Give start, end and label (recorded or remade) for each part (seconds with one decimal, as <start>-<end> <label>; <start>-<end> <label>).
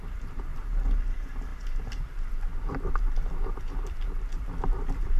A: 0.0-0.5 remade; 0.5-1.1 recorded; 1.1-5.2 remade